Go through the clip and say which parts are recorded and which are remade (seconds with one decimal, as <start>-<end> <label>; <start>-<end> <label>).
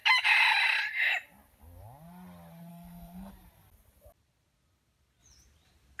0.0-2.7 recorded; 2.7-3.3 remade; 3.3-6.0 recorded